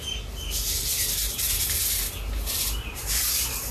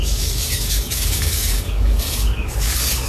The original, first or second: first